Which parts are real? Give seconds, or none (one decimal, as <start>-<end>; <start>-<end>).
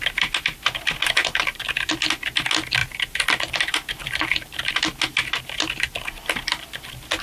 0.0-2.8; 4.7-7.2